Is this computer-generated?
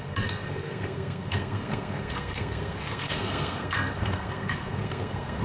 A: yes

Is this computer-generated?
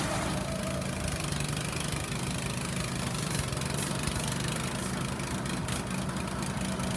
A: no